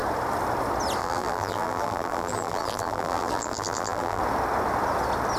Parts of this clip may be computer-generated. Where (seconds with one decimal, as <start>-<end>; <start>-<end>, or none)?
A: 1.0-4.2